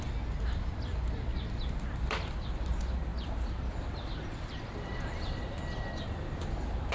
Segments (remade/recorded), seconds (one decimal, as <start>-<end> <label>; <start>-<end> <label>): 0.0-3.1 recorded; 3.1-5.6 remade; 5.6-6.9 recorded